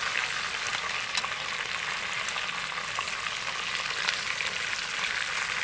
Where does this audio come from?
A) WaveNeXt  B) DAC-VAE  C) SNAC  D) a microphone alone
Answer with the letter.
D